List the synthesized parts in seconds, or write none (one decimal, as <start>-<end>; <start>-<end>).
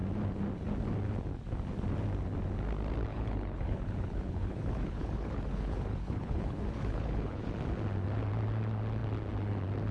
3.1-7.5